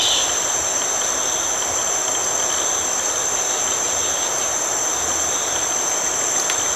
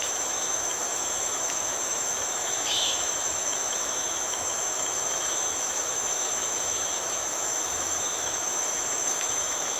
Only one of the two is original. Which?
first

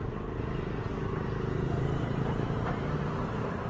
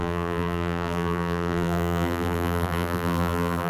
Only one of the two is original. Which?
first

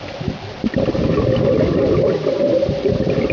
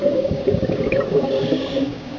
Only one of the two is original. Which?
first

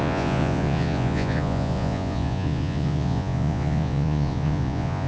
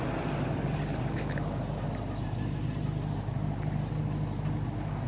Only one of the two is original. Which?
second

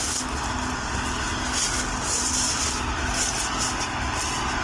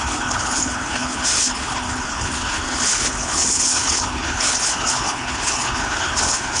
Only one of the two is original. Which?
first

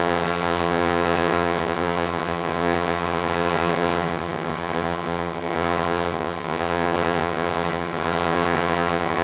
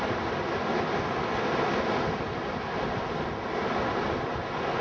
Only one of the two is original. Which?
second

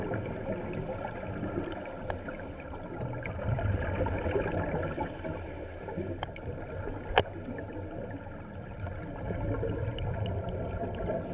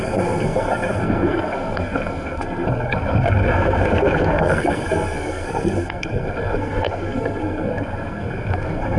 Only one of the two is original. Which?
first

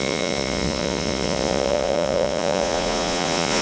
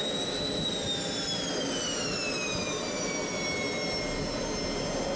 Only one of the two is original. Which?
second